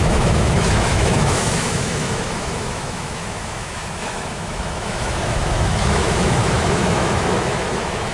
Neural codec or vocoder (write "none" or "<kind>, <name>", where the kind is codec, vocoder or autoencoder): autoencoder, DAC-VAE